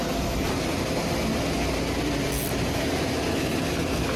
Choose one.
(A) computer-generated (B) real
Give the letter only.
B